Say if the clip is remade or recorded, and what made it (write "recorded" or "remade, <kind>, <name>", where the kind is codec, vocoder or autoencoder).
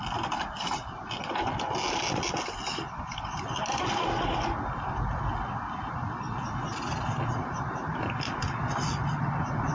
recorded